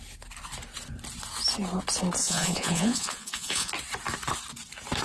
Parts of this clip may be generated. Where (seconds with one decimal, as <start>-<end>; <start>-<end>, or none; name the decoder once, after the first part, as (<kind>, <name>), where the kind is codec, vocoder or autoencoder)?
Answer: 2.2-3.7 (vocoder, Vocos)